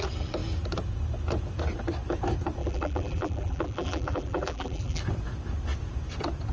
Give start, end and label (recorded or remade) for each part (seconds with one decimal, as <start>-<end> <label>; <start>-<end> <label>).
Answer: 0.0-2.6 recorded; 2.6-5.0 remade; 5.0-6.5 recorded